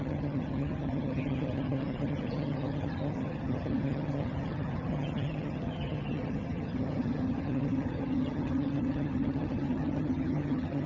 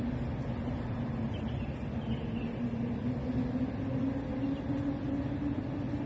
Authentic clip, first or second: second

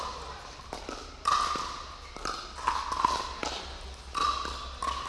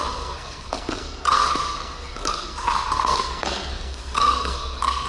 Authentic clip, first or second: first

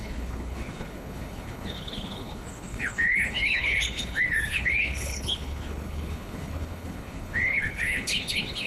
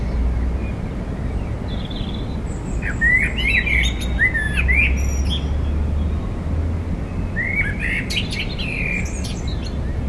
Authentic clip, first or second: second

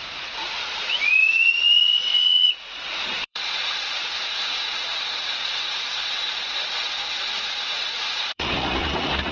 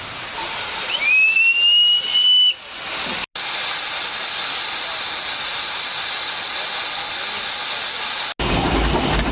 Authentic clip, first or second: second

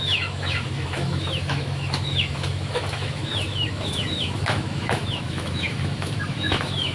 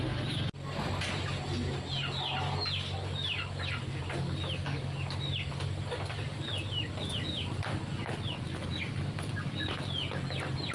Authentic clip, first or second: second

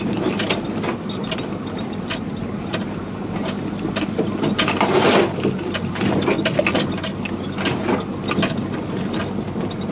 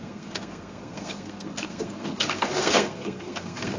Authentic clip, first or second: first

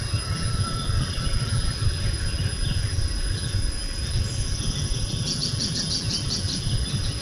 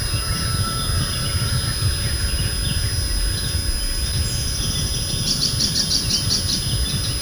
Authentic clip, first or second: second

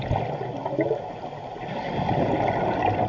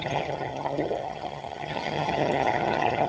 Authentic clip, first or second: first